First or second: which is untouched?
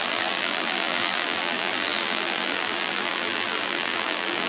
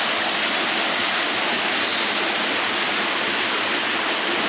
second